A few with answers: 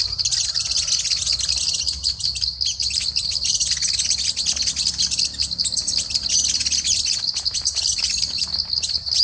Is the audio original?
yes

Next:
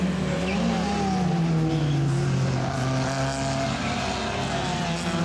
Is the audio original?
yes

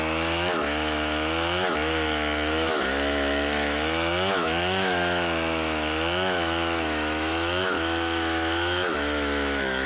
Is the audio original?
no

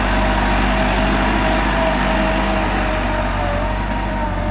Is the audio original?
yes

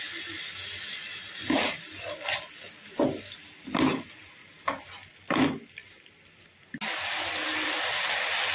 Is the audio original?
yes